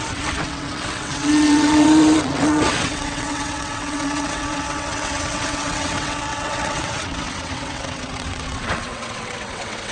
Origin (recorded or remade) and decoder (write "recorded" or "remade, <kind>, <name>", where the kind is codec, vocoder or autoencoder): remade, vocoder, WaveNeXt